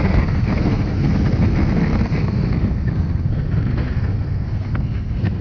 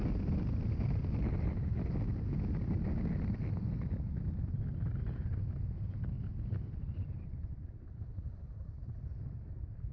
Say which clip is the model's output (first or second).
first